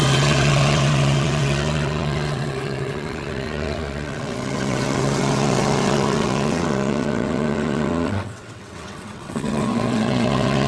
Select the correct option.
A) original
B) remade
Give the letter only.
B